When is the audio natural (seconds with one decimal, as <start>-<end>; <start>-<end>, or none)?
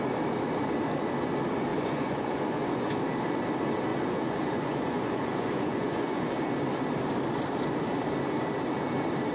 0.0-1.7; 3.0-3.9; 6.3-9.3